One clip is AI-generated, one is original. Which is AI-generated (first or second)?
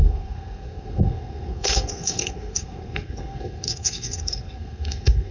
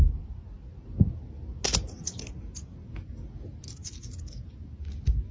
first